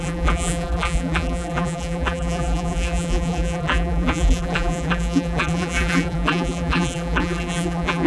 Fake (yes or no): yes